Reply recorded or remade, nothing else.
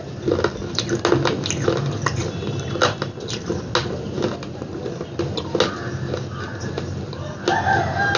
recorded